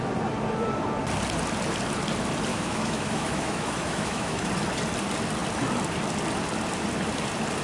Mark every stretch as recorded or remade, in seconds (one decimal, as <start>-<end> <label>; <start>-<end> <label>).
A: 0.0-2.5 recorded; 2.5-4.5 remade; 4.5-7.6 recorded